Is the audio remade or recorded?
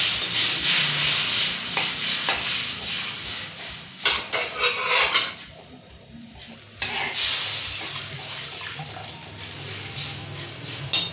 recorded